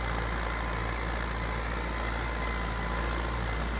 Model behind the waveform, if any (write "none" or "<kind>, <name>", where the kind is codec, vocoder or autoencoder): none